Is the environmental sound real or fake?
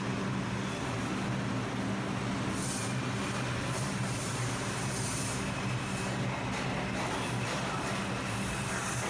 real